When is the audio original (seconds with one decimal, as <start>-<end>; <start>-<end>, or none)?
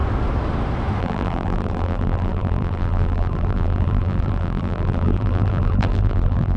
0.0-1.0